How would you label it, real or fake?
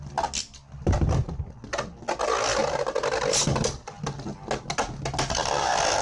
real